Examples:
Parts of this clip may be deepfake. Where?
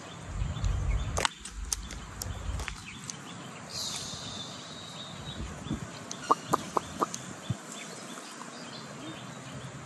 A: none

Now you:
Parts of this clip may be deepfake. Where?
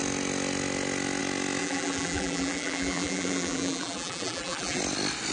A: 1.6-4.8 (vocoder, BigVGAN v2)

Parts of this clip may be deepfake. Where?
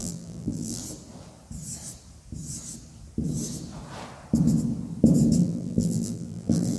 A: 0.0-0.8 (vocoder, BigVGAN v2); 5.4-6.8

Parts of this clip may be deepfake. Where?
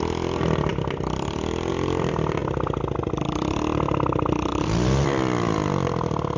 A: 4.5-5.5 (vocoder, BigVGAN v2)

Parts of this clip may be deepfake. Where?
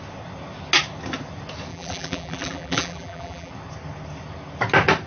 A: 1.7-3.5 (vocoder, BigVGAN v2)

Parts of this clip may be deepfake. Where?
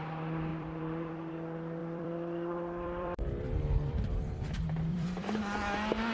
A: 0.5-1.3 (vocoder, BigVGAN v2); 1.8-4.2; 4.9-5.4